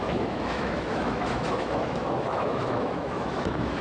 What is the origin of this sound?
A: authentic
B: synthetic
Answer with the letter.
B